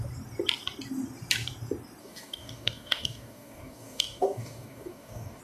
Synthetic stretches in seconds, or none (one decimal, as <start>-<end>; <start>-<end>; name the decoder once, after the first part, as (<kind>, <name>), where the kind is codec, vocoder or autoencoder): 2.0-5.4 (codec, DAC)